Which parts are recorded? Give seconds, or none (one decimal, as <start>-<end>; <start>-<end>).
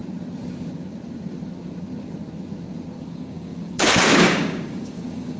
0.0-3.0